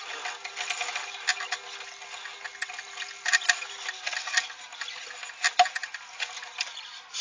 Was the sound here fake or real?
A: real